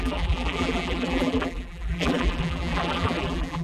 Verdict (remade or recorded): remade